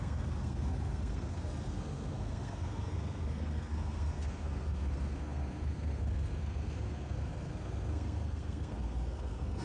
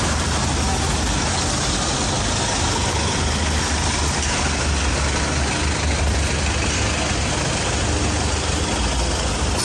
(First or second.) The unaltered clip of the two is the second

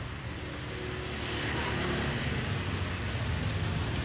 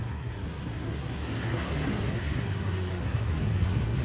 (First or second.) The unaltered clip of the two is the first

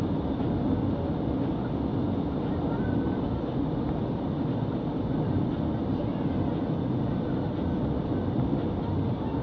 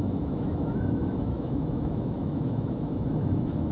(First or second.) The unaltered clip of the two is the first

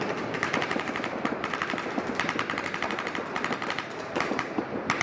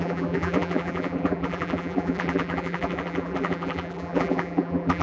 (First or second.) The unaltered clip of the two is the first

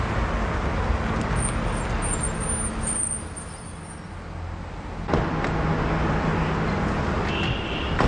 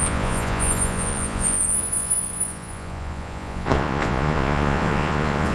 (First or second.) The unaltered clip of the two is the first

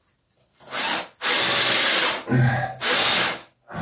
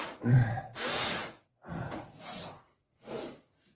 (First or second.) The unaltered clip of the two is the first